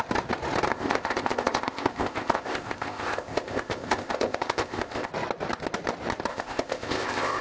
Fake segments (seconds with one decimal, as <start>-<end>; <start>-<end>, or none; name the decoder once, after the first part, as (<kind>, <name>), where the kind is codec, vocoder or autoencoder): 0.7-5.1 (codec, ZipCodec); 6.3-7.4